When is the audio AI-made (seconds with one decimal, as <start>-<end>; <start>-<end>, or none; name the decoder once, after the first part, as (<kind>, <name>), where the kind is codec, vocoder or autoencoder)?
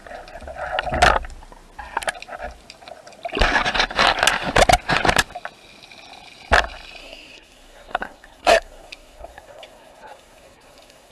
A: 7.0-11.1 (codec, SNAC)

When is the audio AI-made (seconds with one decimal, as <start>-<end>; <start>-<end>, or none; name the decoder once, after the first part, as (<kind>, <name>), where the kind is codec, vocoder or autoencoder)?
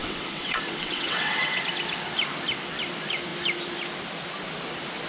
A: 0.0-1.6 (vocoder, WaveNeXt)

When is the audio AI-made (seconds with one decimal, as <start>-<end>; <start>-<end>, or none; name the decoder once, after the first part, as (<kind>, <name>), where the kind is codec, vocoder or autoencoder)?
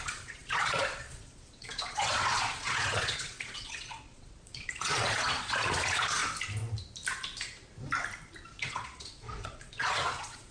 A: 0.0-6.2 (vocoder, Vocos); 8.6-10.5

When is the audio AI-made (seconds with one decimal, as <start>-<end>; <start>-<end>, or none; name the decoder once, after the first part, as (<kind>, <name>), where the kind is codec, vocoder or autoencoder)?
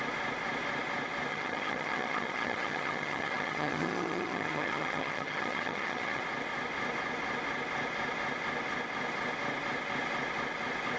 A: 1.3-6.2 (vocoder, HiFi-GAN)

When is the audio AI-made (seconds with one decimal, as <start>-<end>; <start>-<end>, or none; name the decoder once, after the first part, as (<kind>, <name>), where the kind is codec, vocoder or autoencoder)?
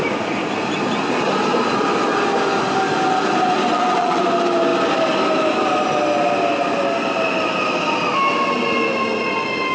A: 3.7-4.2 (vocoder, WaveNeXt)